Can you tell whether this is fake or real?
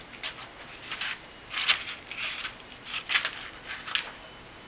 real